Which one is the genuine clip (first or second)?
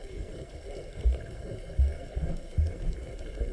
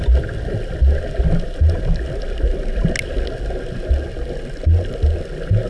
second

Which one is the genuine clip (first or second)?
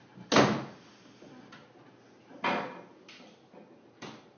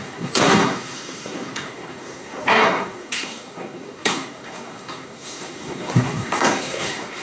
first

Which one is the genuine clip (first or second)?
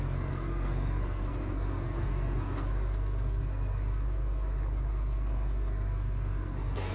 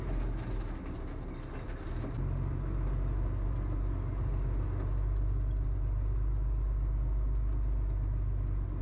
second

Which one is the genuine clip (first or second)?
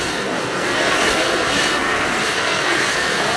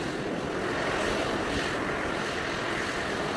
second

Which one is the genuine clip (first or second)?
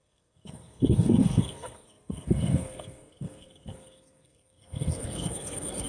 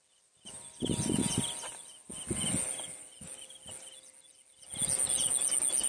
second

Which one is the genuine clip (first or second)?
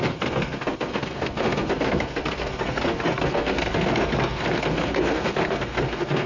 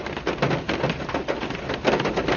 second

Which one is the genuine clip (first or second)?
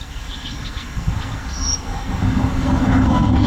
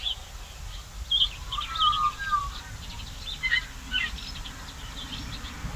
second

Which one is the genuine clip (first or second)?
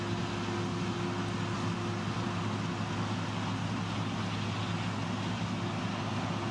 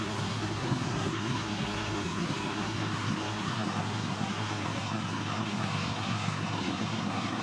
first